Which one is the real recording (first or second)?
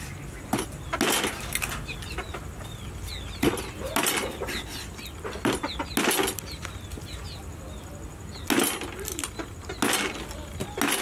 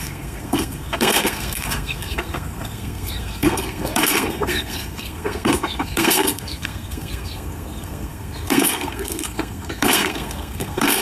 first